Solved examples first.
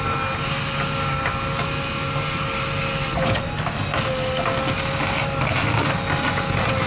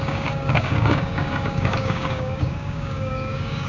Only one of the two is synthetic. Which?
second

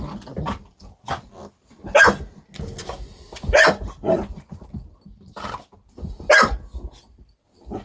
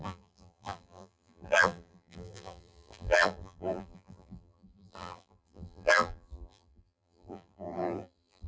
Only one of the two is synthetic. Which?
second